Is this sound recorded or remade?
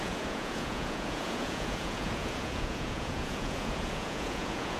remade